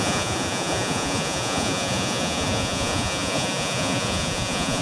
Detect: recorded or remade remade